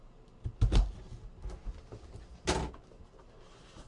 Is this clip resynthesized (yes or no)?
no